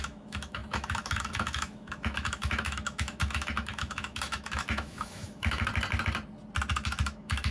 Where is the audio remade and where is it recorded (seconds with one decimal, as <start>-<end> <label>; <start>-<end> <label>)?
0.0-5.7 remade; 5.7-6.7 recorded; 6.7-7.5 remade